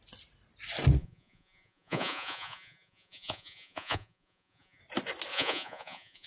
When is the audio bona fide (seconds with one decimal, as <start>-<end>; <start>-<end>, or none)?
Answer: 0.0-1.0; 4.8-5.3